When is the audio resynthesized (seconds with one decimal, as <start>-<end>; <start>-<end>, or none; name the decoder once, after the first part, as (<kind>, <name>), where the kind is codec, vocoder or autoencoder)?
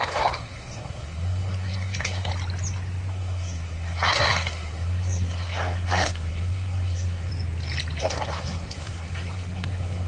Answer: 0.0-2.3 (codec, SNAC); 3.1-7.3; 8.0-10.1